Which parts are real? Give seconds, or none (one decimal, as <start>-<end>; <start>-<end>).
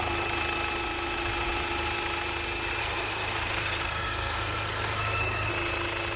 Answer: 0.0-2.8; 5.5-6.2